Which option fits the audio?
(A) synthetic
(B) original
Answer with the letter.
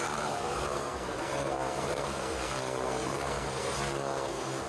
A